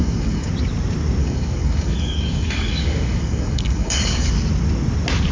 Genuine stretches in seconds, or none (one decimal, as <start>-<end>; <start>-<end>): 0.5-1.2; 4.3-5.3